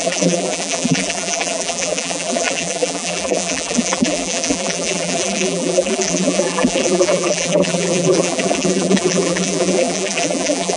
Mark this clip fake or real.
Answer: fake